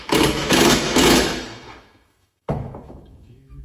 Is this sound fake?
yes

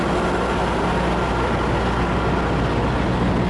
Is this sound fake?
no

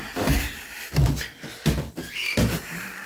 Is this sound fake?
no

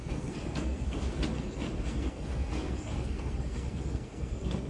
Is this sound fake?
yes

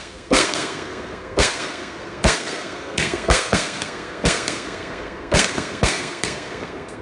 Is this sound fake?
yes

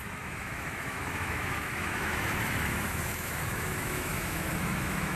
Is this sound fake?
yes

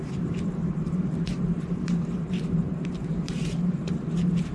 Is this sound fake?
yes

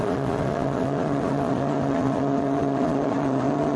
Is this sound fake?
yes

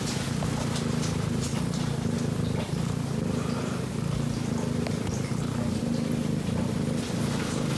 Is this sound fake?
no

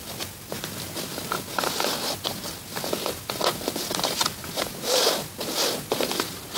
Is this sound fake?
no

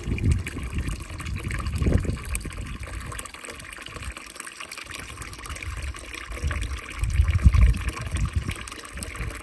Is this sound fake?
no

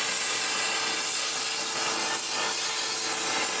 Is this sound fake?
no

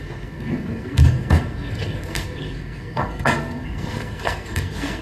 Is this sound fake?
yes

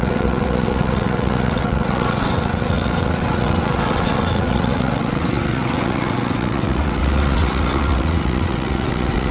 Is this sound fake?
yes